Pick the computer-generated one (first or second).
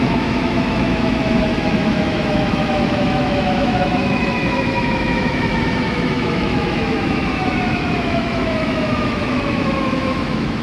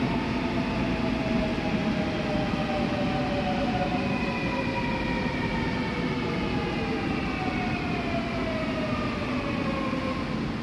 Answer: first